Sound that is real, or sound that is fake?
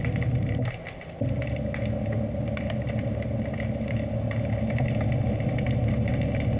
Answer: real